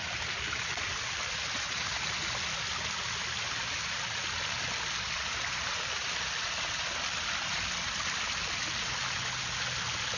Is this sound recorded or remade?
recorded